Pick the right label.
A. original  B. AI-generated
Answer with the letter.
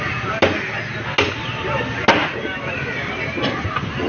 A